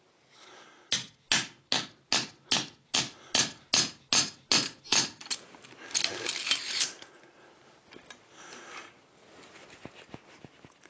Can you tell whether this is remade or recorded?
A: recorded